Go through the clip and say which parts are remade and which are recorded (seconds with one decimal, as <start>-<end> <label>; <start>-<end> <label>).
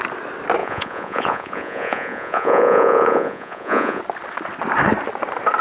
0.0-0.6 recorded; 0.6-4.0 remade; 4.0-5.6 recorded